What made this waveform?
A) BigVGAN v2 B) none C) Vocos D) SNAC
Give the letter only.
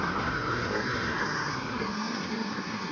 D